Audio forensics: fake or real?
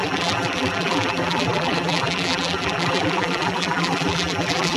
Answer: fake